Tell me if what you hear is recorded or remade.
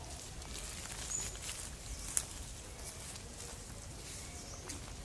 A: recorded